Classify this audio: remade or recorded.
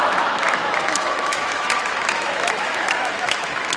remade